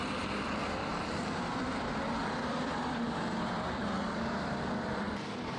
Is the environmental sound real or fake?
fake